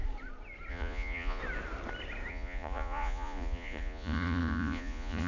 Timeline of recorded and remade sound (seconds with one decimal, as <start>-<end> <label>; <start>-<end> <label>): 0.0-0.7 recorded; 0.7-1.4 remade; 1.4-2.3 recorded; 2.3-5.3 remade

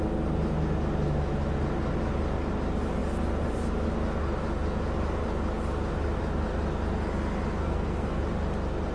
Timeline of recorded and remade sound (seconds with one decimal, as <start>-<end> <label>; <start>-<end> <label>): 0.0-7.6 recorded; 7.6-8.2 remade; 8.2-8.9 recorded